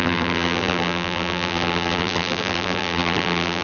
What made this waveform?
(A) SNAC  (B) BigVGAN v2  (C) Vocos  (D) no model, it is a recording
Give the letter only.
B